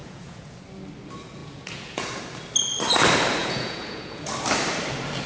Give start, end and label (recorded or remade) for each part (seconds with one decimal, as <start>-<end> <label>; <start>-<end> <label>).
0.0-0.5 remade; 0.5-1.4 recorded; 1.4-2.2 remade; 2.2-3.4 recorded; 3.4-4.3 remade; 4.3-5.3 recorded